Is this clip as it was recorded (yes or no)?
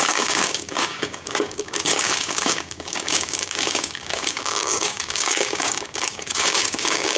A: no